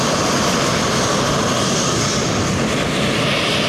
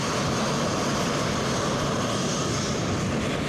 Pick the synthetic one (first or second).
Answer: first